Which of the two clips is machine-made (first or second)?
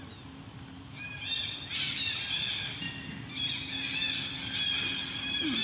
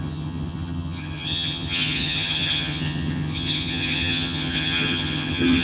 second